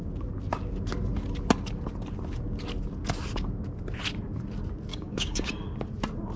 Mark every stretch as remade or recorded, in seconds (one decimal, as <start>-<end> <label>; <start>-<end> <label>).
0.0-4.9 recorded; 4.9-5.5 remade; 5.5-6.4 recorded